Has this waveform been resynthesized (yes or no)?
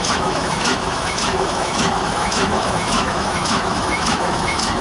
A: yes